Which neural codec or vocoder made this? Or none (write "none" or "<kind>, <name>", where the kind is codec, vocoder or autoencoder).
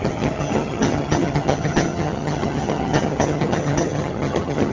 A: vocoder, HiFi-GAN